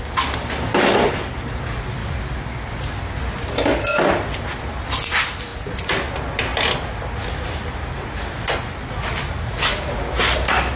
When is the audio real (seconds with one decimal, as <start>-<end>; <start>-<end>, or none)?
0.0-10.8